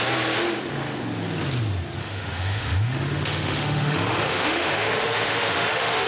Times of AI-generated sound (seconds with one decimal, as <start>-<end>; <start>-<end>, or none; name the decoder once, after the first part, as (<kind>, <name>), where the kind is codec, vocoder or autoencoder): 2.0-6.1 (autoencoder, DAC-VAE)